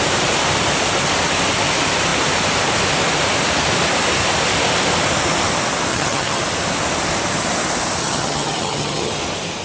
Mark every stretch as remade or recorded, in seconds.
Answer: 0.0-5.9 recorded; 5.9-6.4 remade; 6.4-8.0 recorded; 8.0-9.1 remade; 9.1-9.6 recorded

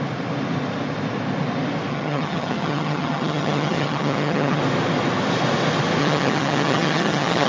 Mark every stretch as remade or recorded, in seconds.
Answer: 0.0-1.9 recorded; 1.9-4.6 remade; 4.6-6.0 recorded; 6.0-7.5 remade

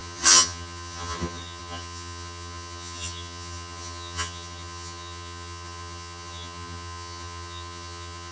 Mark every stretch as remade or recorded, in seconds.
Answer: 0.0-8.3 remade

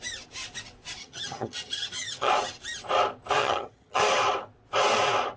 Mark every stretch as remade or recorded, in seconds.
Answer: 0.0-1.0 recorded; 1.0-2.3 remade; 2.3-3.4 recorded; 3.4-4.0 remade; 4.0-5.4 recorded

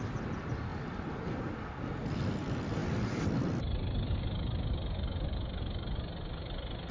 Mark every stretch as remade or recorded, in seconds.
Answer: 0.0-6.9 recorded